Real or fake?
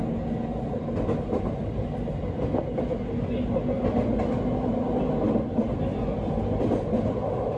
real